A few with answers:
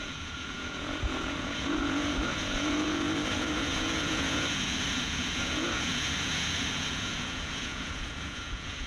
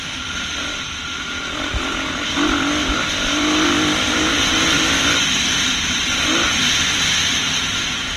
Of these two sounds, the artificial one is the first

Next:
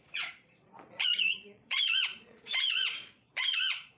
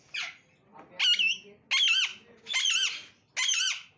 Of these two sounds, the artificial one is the first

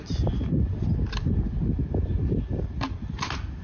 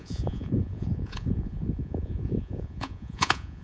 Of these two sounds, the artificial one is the second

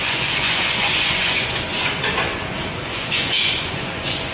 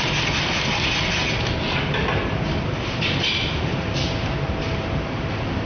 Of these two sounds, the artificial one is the first